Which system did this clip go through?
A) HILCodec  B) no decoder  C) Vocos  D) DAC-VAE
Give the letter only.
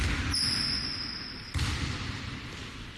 B